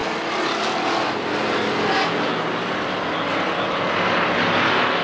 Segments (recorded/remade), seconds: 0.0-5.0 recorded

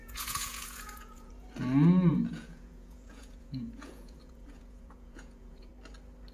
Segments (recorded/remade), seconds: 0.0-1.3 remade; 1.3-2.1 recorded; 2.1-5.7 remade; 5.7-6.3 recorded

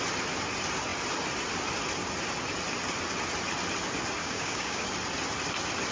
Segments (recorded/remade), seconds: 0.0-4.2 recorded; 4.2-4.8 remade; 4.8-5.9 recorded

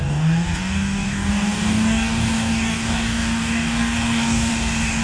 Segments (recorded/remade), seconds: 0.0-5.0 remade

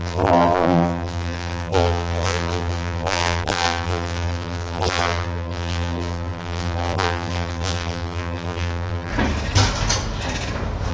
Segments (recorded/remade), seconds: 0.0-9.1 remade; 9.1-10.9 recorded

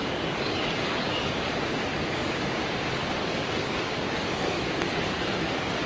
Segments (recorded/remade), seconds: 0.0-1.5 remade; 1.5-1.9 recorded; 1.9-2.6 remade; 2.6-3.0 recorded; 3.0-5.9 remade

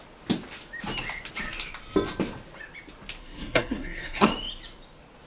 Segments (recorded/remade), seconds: 0.0-3.2 recorded; 3.2-4.3 remade; 4.3-5.3 recorded